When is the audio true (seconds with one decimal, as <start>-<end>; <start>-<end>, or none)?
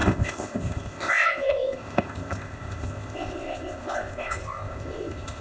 none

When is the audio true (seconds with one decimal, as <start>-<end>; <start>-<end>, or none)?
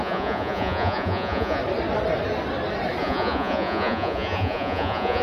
1.6-3.0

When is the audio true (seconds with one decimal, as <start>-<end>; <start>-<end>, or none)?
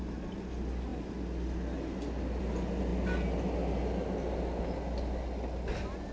0.0-6.1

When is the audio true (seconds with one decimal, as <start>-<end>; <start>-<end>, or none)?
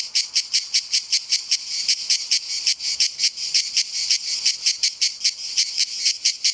0.0-6.5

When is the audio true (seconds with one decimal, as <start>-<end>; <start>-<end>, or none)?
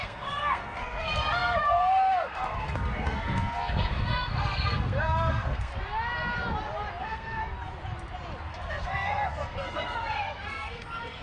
5.7-7.0; 7.4-8.5